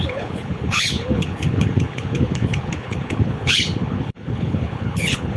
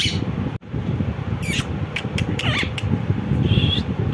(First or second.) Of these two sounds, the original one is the second